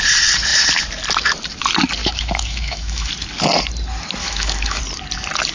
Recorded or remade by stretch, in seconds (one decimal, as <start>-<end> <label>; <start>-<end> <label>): 0.0-2.0 recorded; 2.0-3.1 remade; 3.1-4.2 recorded; 4.2-4.8 remade; 4.8-5.5 recorded